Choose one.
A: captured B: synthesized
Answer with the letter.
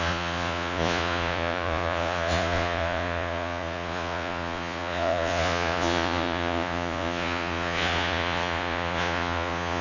B